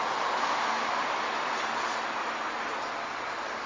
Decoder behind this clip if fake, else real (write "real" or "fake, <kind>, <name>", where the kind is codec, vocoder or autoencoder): real